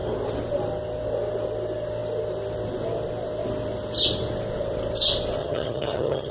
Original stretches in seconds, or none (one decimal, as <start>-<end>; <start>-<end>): 0.0-5.4